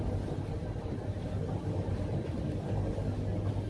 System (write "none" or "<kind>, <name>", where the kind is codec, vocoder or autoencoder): none